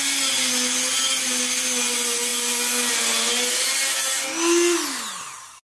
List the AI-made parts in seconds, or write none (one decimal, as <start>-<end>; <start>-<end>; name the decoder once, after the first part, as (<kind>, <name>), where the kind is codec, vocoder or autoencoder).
none

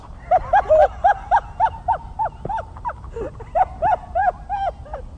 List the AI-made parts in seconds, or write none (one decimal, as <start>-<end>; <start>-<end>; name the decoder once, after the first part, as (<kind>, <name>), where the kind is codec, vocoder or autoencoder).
none

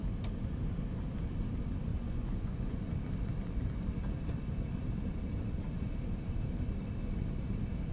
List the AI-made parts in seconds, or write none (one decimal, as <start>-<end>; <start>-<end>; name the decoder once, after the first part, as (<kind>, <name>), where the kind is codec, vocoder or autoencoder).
1.9-2.8 (vocoder, Vocos)

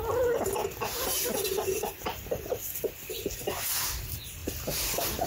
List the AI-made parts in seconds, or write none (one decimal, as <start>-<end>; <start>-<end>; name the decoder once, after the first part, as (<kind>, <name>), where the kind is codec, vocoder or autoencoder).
none